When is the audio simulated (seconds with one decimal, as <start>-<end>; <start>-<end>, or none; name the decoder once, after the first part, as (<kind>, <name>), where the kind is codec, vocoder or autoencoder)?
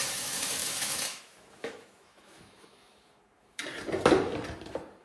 0.0-3.6 (autoencoder, DAC-VAE)